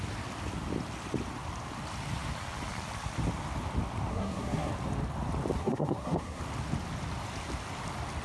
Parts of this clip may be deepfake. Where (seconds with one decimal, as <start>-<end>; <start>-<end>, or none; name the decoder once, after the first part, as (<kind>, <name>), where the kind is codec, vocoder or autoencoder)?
4.1-4.7 (codec, SNAC); 5.6-6.4